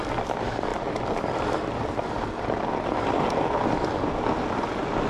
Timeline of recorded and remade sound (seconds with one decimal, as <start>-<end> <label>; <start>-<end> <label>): 0.0-0.7 recorded; 0.7-2.1 remade; 2.1-5.1 recorded